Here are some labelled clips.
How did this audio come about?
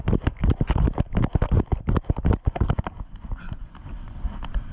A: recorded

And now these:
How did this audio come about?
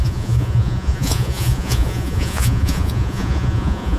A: remade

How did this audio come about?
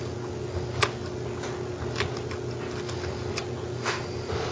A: recorded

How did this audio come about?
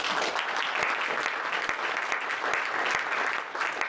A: recorded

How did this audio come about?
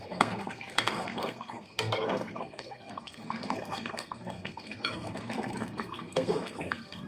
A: remade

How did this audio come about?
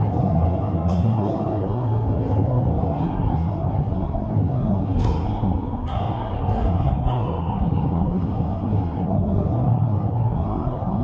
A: remade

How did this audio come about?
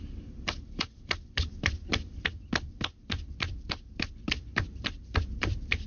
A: remade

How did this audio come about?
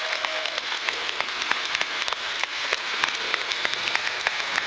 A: remade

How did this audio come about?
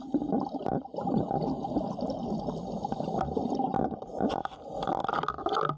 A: recorded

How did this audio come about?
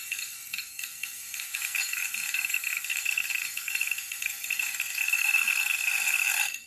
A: remade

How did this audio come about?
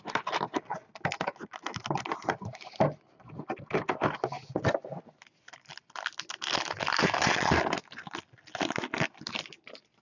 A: recorded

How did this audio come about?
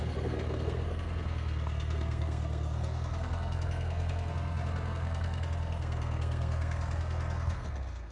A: remade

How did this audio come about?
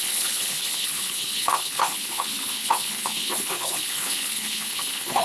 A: remade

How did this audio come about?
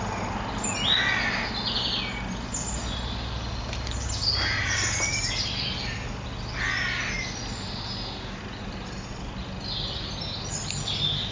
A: recorded